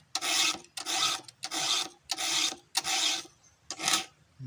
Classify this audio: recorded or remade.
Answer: recorded